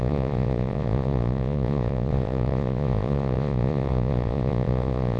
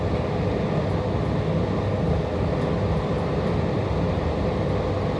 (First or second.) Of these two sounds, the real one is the second